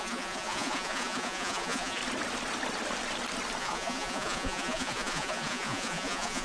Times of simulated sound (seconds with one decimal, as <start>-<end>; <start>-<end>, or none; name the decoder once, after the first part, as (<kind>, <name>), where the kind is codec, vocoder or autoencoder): 0.0-2.0 (vocoder, Vocos); 3.6-6.4